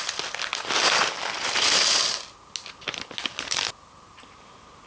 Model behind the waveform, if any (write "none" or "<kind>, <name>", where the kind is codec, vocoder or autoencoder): none